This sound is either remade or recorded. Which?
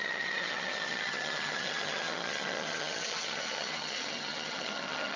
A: remade